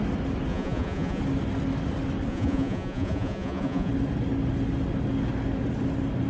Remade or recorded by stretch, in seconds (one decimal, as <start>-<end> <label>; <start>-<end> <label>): 0.0-0.5 recorded; 0.5-1.2 remade; 1.2-2.3 recorded; 2.3-3.9 remade; 3.9-6.3 recorded